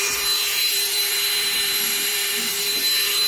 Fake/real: fake